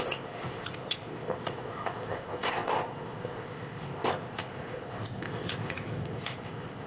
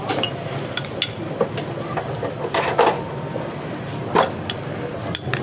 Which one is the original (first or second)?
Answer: second